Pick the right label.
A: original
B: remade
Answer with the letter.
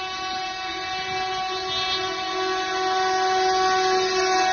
A